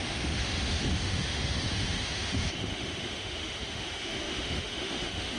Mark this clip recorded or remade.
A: remade